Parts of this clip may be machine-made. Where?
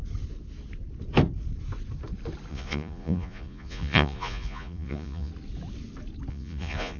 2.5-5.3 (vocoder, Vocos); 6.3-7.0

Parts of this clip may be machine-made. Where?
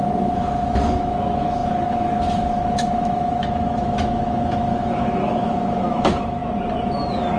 0.0-6.4 (autoencoder, DAC-VAE); 7.0-7.4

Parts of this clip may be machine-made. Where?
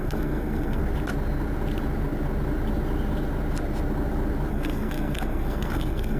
0.0-0.8 (codec, SNAC); 4.5-6.2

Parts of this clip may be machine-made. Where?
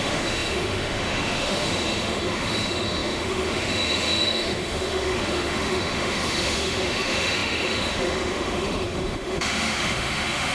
0.0-10.5 (autoencoder, DAC-VAE)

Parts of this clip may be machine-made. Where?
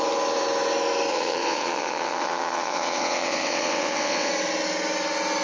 1.1-4.3 (vocoder, WaveNeXt)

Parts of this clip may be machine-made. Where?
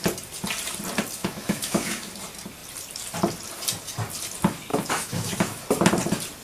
1.2-2.1 (autoencoder, DAC-VAE); 4.7-5.6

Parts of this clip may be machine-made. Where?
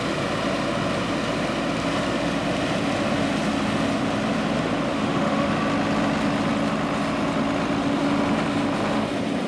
4.9-5.5 (autoencoder, DAC-VAE)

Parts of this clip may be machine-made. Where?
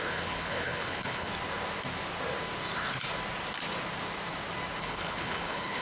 0.0-1.3 (codec, HILCodec); 4.8-5.8